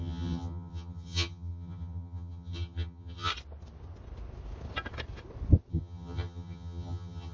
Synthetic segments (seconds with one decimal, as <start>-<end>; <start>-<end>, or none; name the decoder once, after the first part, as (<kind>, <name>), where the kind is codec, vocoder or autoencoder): 0.0-3.3 (vocoder, HiFi-GAN); 5.7-7.3